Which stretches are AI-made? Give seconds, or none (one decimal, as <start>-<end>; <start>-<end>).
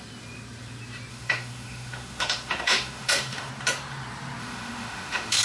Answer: 1.1-3.5; 4.4-5.4